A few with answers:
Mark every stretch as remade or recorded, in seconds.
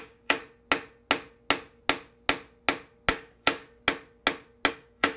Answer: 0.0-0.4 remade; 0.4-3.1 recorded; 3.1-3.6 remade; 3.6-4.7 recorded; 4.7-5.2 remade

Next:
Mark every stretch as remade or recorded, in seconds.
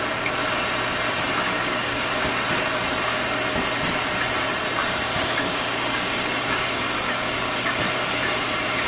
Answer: 0.0-1.4 recorded; 1.4-2.3 remade; 2.3-4.8 recorded; 4.8-7.7 remade; 7.7-8.9 recorded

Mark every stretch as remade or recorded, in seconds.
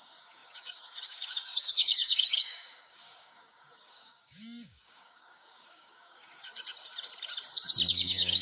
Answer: 0.0-6.5 remade; 6.5-7.9 recorded; 7.9-8.4 remade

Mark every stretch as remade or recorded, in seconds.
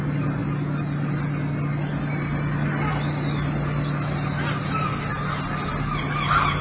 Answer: 0.0-6.6 recorded